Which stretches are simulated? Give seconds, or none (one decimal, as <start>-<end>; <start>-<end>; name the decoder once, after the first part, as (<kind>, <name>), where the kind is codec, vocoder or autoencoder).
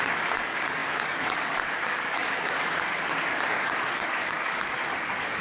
0.0-5.4 (codec, DAC)